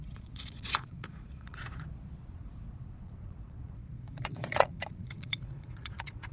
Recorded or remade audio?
remade